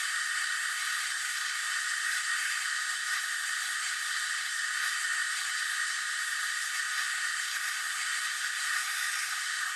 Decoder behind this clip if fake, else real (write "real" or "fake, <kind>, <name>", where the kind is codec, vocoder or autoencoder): fake, codec, SNAC